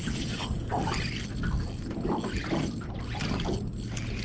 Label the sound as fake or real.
real